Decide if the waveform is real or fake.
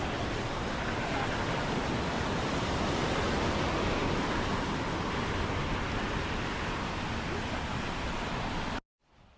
real